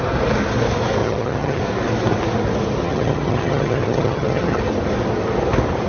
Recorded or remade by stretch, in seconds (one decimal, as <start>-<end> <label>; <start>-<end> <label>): 0.0-1.0 recorded; 1.0-1.6 remade; 1.6-2.8 recorded; 2.8-4.6 remade; 4.6-5.9 recorded